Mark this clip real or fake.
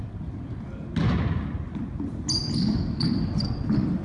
real